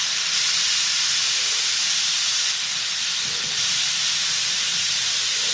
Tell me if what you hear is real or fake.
real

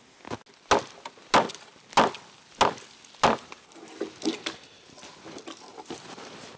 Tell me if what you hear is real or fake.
real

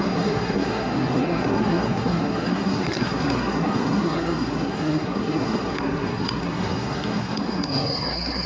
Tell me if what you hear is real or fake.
fake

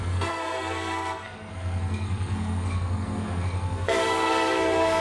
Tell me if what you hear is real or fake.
fake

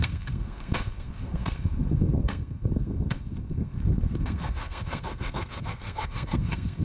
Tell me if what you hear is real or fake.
fake